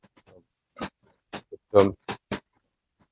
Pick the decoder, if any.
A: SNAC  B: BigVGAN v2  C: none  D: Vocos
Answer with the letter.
B